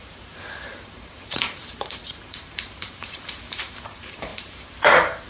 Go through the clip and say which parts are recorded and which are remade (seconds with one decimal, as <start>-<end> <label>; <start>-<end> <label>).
0.0-5.3 remade